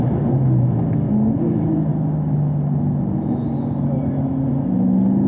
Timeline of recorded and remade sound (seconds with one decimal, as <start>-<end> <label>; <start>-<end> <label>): 0.0-5.3 recorded